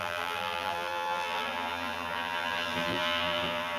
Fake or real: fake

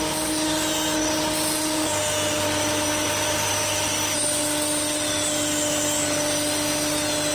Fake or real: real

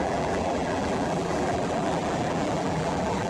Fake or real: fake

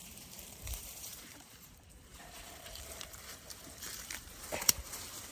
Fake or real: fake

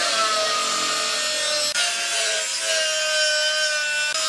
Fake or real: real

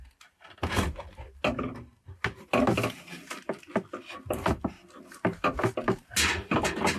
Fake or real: real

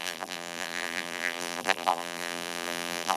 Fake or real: fake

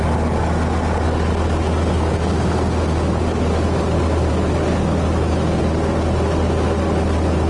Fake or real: real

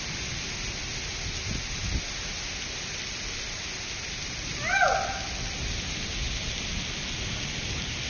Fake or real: real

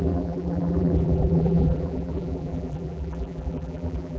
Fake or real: fake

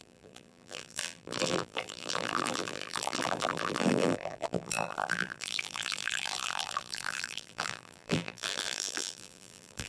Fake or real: fake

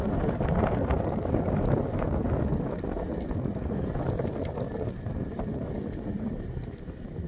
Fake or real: real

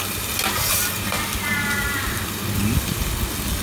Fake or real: real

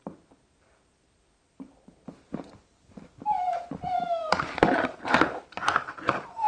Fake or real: real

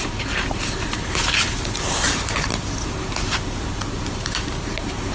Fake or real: fake